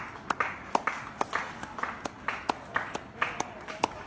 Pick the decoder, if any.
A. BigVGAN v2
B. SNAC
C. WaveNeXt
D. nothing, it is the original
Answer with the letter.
D